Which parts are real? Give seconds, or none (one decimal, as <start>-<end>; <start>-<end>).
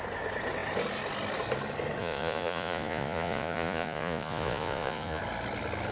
0.0-2.0; 5.2-5.9